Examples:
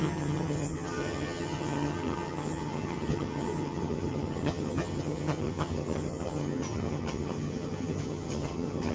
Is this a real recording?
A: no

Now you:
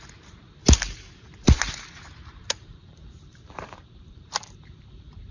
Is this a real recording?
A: no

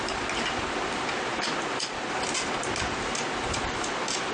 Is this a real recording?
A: yes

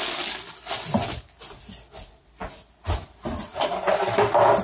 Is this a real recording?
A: yes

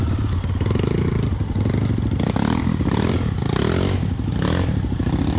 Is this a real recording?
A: yes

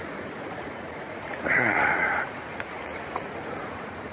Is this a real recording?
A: no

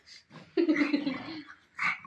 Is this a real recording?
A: yes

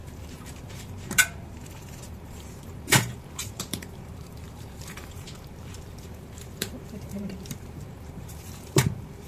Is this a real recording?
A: no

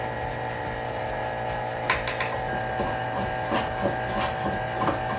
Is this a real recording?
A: yes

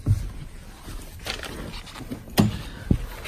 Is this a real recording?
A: yes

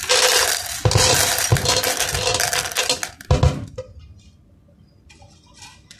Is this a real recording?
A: yes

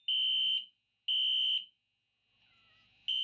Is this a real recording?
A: yes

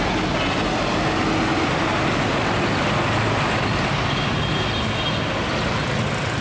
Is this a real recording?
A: yes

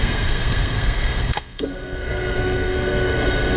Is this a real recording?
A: no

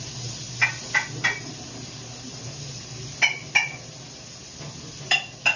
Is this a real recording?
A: yes